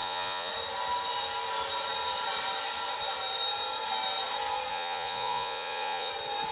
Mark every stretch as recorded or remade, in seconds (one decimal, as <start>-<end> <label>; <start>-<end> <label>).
0.0-0.5 remade; 0.5-4.7 recorded; 4.7-6.1 remade; 6.1-6.5 recorded